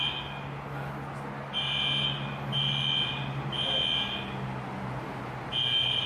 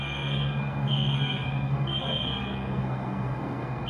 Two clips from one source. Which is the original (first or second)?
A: first